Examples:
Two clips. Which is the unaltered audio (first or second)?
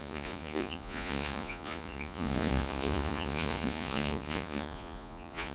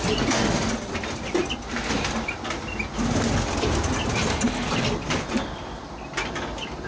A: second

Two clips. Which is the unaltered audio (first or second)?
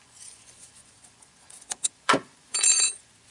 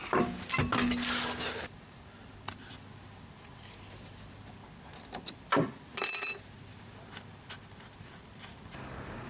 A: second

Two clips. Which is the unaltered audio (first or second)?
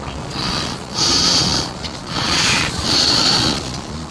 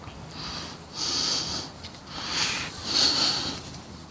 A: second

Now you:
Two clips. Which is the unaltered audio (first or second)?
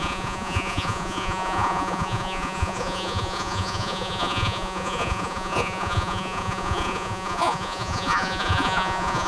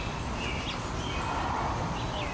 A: second